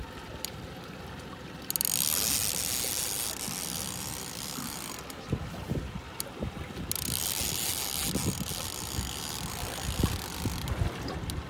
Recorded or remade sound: recorded